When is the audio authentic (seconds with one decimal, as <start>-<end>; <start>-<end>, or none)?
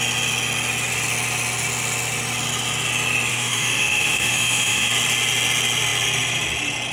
0.0-3.3; 4.9-6.9